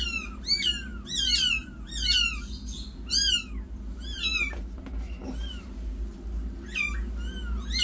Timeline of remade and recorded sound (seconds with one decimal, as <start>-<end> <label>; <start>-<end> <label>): 0.0-7.8 recorded